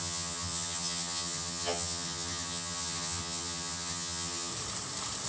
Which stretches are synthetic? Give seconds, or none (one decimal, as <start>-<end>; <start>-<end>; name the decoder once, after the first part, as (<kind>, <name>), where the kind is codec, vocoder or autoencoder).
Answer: 0.0-4.5 (vocoder, HiFi-GAN)